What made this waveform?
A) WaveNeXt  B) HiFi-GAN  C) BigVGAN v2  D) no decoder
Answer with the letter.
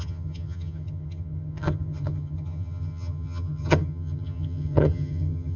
B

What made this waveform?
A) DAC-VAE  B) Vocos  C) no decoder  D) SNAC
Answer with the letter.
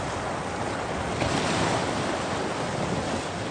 C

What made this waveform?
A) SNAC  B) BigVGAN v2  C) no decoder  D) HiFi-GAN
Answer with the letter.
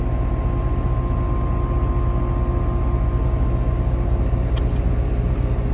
C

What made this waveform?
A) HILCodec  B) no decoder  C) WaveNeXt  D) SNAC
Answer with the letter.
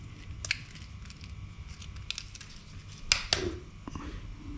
B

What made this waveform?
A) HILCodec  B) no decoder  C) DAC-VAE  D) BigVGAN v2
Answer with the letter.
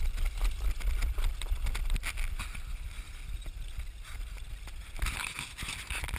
B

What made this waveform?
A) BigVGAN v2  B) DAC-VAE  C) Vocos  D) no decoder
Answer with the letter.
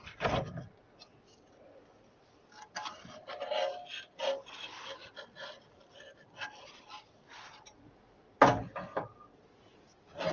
D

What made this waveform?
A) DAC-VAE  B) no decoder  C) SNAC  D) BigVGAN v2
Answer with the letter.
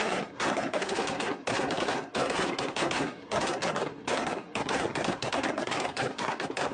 C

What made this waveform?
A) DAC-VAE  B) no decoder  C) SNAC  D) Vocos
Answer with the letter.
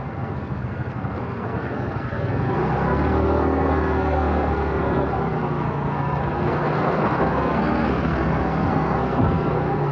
C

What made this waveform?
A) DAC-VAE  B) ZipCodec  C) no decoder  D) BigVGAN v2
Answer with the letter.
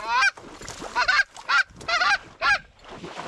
C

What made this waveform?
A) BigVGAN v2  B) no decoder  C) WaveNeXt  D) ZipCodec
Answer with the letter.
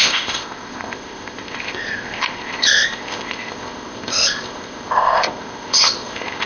D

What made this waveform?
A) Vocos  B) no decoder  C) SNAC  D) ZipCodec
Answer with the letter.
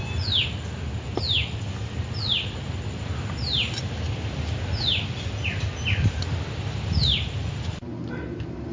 B